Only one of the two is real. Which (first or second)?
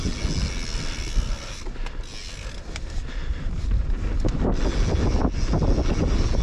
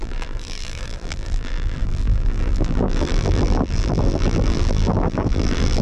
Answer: first